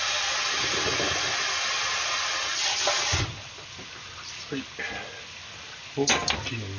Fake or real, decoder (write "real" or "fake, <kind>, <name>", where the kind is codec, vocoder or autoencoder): real